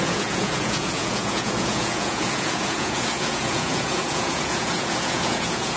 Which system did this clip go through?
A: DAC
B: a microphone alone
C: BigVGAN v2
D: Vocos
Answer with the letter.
D